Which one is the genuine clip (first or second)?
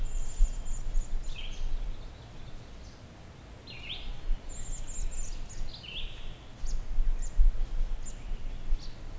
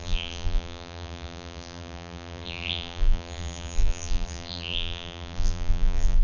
first